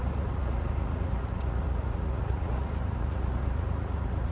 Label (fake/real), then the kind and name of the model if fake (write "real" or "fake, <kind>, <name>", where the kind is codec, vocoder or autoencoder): fake, vocoder, Vocos